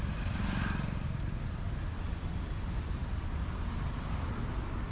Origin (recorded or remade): recorded